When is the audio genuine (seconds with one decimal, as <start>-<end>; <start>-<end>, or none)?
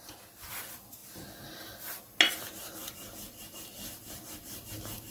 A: 0.0-2.8